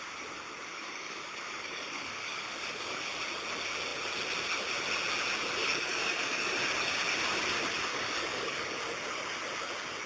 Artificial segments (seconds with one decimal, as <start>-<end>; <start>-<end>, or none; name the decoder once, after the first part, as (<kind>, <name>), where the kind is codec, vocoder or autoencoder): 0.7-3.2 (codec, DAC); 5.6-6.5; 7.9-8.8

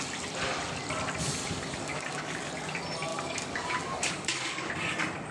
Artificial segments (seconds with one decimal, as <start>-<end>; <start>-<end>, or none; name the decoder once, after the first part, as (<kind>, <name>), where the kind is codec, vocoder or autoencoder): 1.4-2.5 (codec, DAC); 3.1-4.7

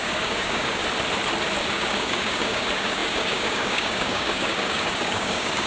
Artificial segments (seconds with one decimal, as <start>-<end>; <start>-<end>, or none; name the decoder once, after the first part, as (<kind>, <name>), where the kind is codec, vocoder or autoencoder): 0.0-0.8 (codec, DAC); 1.7-5.7

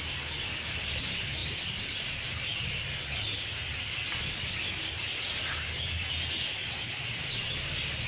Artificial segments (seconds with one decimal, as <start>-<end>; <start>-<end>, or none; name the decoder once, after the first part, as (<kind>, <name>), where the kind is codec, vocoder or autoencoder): none

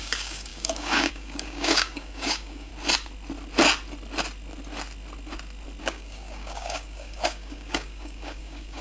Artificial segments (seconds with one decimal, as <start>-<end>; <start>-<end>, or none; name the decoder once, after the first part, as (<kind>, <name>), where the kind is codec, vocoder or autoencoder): 0.0-2.7 (codec, DAC); 5.8-8.8